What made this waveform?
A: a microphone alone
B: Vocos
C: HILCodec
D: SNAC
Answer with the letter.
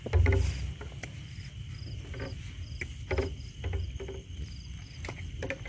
A